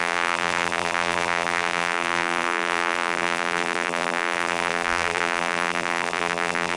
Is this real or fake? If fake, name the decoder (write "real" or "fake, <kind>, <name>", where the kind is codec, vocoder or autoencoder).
fake, vocoder, BigVGAN v2